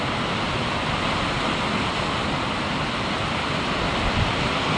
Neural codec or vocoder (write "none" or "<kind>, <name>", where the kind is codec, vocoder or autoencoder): none